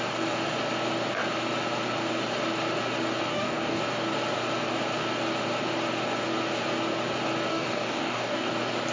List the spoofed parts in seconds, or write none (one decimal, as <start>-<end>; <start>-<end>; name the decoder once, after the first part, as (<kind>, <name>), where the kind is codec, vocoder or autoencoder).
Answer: 3.3-3.8 (codec, DAC); 7.5-8.5